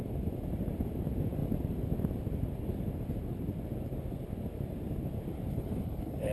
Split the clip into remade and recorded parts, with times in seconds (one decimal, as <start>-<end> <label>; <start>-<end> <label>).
0.0-5.5 recorded; 5.5-6.3 remade